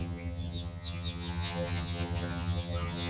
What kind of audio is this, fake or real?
fake